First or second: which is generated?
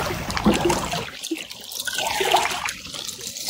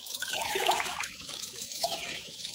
second